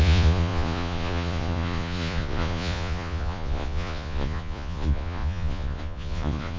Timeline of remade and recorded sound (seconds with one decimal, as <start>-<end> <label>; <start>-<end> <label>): 0.0-6.6 remade